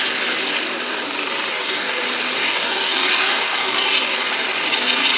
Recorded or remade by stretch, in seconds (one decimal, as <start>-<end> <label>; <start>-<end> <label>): 0.0-1.5 recorded; 1.5-2.0 remade; 2.0-2.4 recorded; 2.4-4.3 remade; 4.3-5.2 recorded